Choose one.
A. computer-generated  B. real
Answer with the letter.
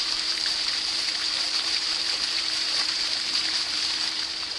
A